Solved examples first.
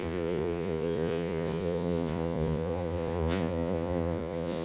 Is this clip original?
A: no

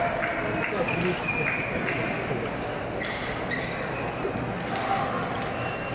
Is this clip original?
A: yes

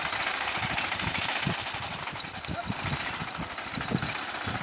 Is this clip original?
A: yes